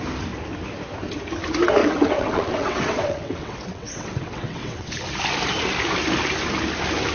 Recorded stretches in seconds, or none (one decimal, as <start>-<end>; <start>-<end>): 0.0-1.8; 4.9-7.1